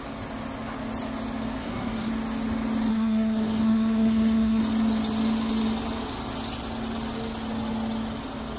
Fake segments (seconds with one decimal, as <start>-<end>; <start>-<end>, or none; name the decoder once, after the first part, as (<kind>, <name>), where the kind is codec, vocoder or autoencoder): 1.6-2.1 (codec, SNAC); 2.9-4.6